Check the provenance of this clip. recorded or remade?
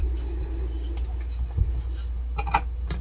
recorded